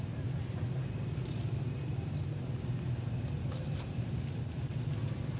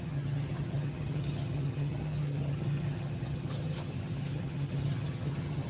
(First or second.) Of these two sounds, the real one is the first